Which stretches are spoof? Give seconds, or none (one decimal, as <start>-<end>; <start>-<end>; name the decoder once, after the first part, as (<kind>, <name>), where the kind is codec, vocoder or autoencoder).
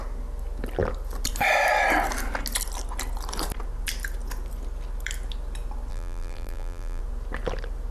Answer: 5.9-7.0 (vocoder, BigVGAN v2)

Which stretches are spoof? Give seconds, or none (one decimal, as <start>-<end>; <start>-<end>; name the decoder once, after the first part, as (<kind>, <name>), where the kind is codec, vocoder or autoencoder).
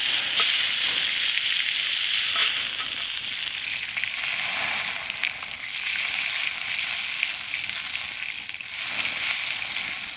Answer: none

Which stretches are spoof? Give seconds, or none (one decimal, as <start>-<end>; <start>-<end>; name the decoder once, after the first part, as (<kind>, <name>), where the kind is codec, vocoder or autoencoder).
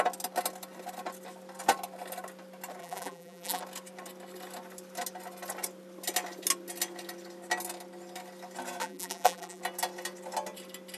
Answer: 2.8-3.6 (vocoder, BigVGAN v2); 8.8-9.6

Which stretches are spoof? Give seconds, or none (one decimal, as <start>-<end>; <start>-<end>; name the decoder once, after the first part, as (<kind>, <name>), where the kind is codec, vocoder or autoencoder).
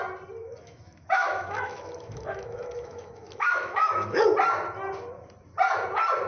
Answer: 0.4-4.2 (autoencoder, DAC-VAE)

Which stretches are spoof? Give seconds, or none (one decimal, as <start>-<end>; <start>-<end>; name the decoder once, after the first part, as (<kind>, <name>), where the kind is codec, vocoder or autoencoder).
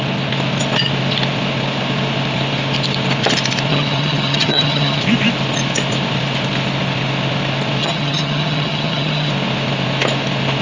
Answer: 3.7-5.0 (vocoder, HiFi-GAN); 7.8-9.3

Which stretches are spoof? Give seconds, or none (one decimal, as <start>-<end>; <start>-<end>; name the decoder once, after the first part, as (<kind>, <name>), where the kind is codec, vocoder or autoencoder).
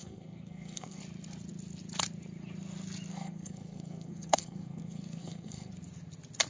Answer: 0.0-1.0 (codec, SNAC); 3.1-5.7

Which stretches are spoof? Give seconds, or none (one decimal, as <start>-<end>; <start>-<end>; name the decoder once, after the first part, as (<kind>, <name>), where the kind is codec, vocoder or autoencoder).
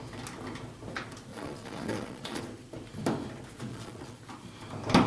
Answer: 1.3-2.4 (vocoder, Vocos); 3.7-4.2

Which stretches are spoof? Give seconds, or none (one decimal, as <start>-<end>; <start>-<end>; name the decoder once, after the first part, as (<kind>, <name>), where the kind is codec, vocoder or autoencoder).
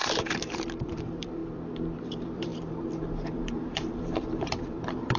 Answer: 0.0-1.4 (vocoder, BigVGAN v2); 2.0-5.2